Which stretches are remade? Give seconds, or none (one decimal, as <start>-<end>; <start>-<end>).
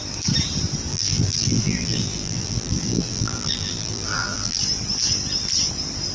0.9-4.6